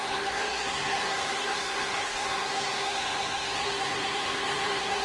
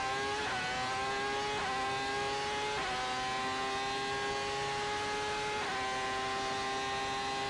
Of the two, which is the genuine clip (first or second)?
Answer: second